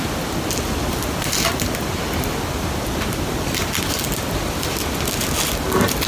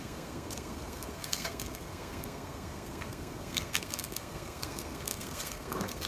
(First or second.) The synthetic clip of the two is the second